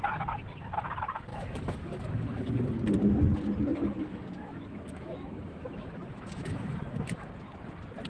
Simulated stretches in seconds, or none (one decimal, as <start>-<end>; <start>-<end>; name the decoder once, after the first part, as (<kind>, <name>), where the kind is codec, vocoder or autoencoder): 1.3-2.5 (autoencoder, DAC-VAE); 3.7-7.3